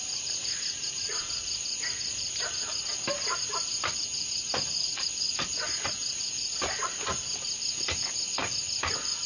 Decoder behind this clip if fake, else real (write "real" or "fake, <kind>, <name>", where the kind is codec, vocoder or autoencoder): real